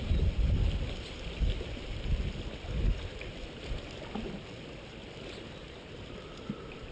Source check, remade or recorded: recorded